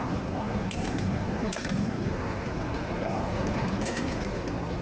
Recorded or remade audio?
remade